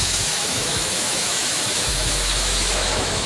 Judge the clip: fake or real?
fake